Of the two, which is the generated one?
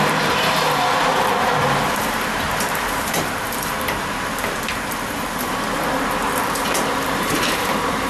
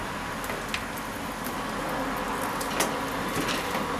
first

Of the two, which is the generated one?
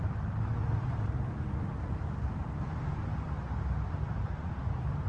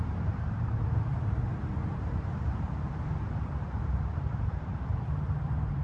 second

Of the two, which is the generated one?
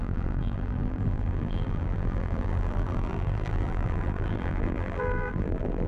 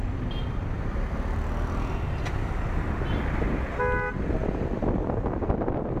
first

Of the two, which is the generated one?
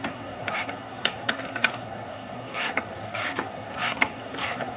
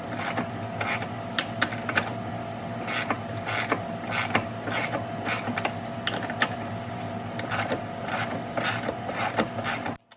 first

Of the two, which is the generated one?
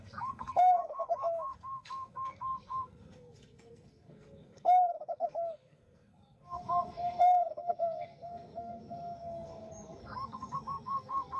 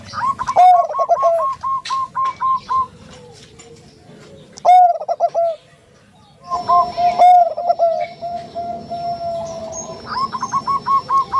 first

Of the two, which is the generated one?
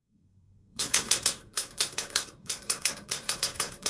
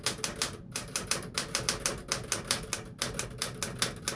first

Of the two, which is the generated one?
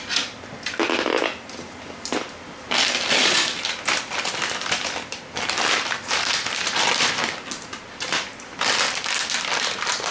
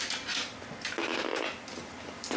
first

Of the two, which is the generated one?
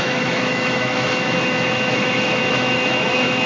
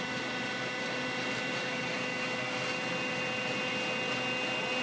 first